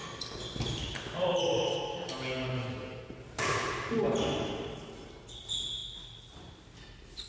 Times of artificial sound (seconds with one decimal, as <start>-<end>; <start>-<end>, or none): none